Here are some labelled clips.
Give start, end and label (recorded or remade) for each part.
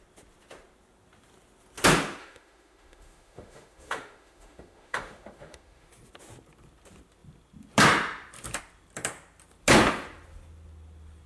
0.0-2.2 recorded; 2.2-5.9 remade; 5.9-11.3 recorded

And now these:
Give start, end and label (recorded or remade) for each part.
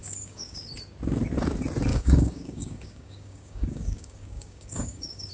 0.0-0.7 remade; 0.7-1.9 recorded; 1.9-5.3 remade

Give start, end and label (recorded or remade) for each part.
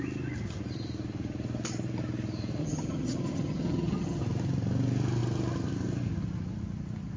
0.0-2.6 recorded; 2.6-4.2 remade; 4.2-7.2 recorded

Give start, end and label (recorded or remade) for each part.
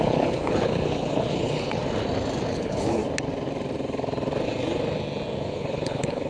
0.0-1.8 remade; 1.8-2.5 recorded; 2.5-3.0 remade; 3.0-5.5 recorded; 5.5-6.3 remade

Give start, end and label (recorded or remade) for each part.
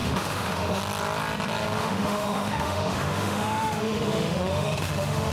0.0-0.8 remade; 0.8-1.8 recorded; 1.8-5.3 remade